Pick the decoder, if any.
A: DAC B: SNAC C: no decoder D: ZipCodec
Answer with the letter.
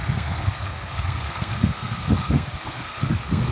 B